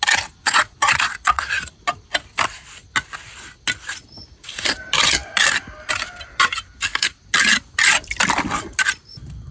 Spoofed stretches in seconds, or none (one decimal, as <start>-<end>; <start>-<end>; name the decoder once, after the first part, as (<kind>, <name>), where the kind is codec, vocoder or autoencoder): 0.4-1.7 (vocoder, Vocos)